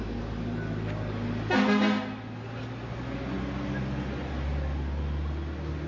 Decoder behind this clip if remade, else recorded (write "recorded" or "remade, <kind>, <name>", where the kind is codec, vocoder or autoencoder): recorded